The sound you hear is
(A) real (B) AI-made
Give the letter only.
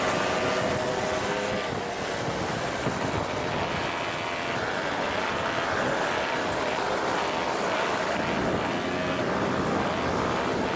A